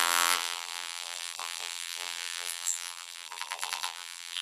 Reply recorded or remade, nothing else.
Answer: remade